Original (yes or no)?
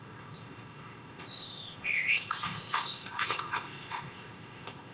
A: no